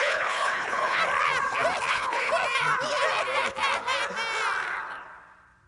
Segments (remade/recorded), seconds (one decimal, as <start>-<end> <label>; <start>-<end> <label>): 0.0-1.0 remade; 1.0-1.9 recorded; 1.9-2.3 remade; 2.3-5.7 recorded